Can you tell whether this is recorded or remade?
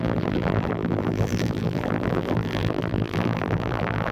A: remade